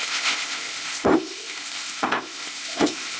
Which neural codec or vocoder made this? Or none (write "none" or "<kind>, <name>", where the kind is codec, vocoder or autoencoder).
codec, ZipCodec